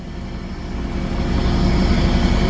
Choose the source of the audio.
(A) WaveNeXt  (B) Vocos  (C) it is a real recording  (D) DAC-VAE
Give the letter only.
C